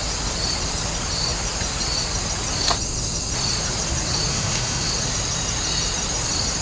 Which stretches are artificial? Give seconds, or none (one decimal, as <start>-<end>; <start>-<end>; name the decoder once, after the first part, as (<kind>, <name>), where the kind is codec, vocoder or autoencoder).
4.3-4.9 (autoencoder, DAC-VAE)